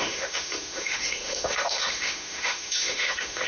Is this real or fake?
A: fake